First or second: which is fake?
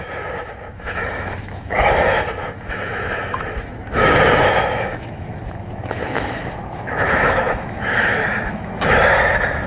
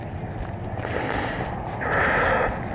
first